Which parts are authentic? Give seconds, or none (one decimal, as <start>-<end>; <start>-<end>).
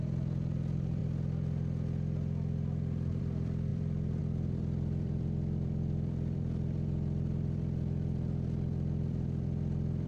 1.0-3.2